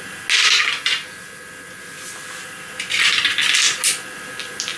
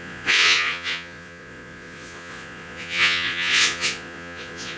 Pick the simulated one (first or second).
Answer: second